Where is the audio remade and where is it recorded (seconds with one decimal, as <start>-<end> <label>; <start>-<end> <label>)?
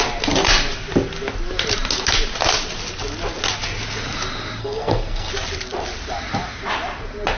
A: 0.0-4.6 recorded; 4.6-5.3 remade; 5.3-7.4 recorded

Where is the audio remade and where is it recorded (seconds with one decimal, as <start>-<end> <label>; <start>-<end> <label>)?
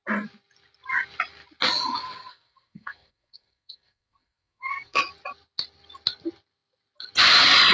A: 0.0-2.3 recorded; 2.3-5.0 remade; 5.0-7.7 recorded